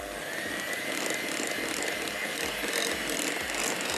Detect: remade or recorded recorded